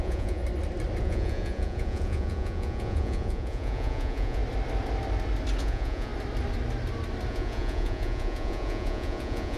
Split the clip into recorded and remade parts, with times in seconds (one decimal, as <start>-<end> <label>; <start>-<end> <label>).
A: 0.0-0.4 remade; 0.4-1.0 recorded; 1.0-4.4 remade; 4.4-5.6 recorded; 5.6-6.1 remade; 6.1-7.3 recorded; 7.3-9.6 remade